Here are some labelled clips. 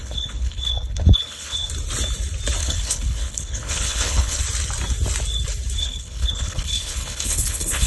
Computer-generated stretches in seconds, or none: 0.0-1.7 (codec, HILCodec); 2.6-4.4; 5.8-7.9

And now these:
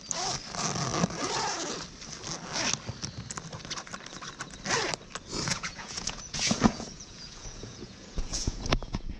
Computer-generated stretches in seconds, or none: 5.5-9.2 (vocoder, Vocos)

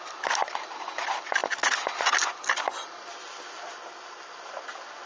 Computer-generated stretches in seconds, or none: none

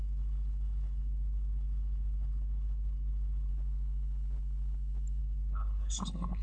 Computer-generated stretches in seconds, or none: 0.0-3.5 (codec, HILCodec); 5.2-6.4

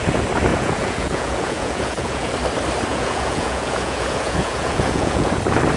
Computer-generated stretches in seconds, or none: 0.5-2.3 (vocoder, Vocos); 2.9-5.3

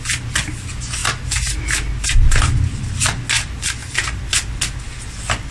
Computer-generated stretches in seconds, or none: none